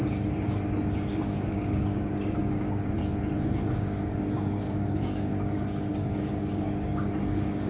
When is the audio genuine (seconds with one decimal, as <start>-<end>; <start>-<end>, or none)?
0.0-1.1; 3.0-3.6